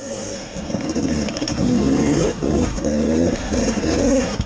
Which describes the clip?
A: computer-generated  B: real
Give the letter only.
A